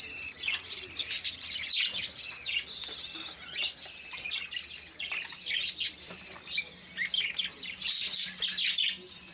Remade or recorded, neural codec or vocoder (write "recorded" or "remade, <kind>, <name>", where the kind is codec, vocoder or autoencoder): recorded